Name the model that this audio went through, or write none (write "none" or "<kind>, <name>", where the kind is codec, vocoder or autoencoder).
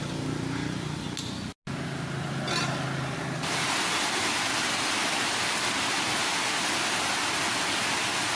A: none